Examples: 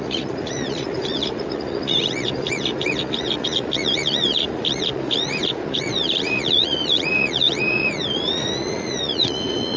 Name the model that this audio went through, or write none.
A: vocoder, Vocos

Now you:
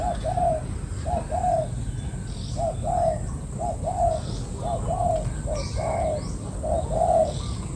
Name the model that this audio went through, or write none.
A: none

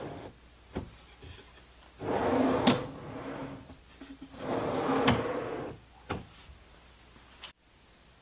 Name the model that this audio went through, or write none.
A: none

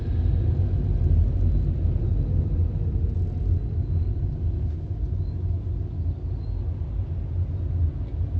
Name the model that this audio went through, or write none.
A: none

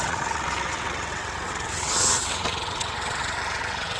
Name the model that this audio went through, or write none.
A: vocoder, WaveNeXt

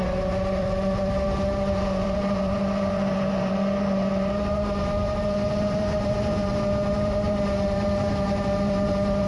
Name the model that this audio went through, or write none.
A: vocoder, BigVGAN v2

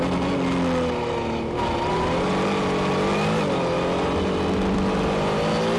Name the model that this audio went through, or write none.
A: none